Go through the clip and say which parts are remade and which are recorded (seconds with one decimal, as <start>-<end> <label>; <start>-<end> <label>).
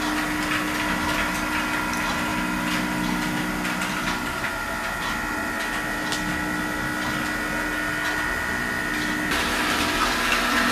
0.0-10.7 recorded